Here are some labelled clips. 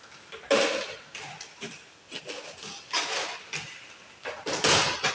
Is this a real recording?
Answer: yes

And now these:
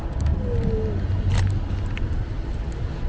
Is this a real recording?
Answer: yes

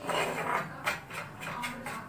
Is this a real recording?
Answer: yes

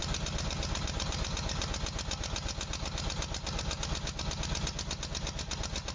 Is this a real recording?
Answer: yes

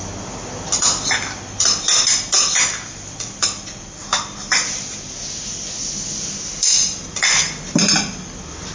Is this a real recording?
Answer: yes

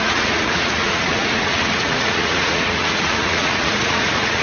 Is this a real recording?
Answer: no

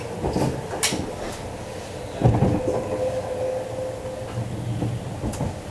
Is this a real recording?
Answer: yes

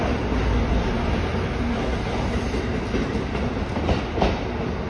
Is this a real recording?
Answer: yes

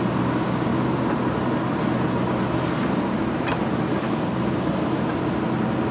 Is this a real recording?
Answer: yes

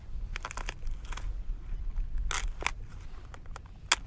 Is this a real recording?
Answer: yes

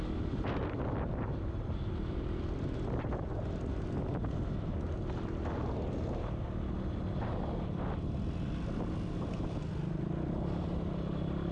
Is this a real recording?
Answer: yes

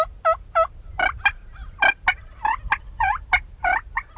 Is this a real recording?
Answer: yes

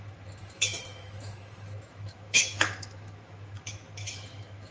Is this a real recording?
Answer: no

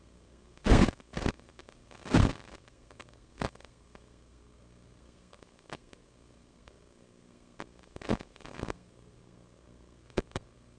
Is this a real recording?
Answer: no